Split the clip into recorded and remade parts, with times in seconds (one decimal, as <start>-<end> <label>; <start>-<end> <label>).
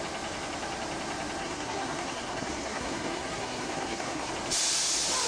0.0-1.4 recorded; 1.4-4.3 remade; 4.3-5.3 recorded